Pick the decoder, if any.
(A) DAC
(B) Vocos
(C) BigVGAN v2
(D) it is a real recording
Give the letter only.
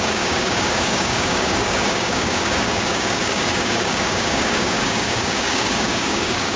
A